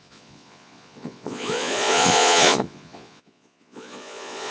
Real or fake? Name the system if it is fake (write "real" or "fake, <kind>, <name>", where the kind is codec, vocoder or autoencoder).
fake, vocoder, Vocos